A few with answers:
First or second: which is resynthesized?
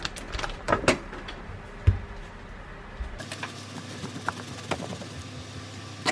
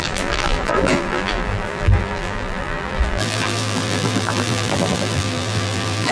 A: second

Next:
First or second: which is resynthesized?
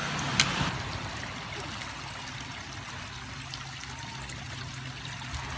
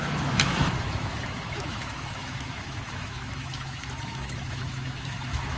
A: second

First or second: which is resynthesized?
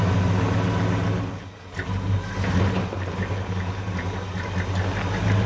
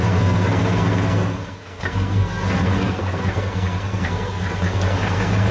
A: second